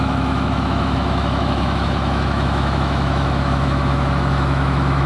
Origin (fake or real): fake